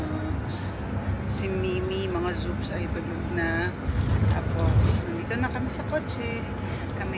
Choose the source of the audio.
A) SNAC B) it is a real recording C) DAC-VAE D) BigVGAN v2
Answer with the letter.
B